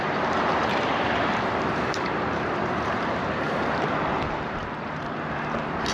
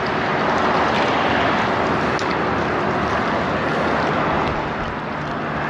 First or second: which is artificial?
first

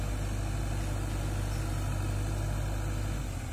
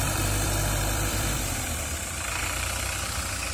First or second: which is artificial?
second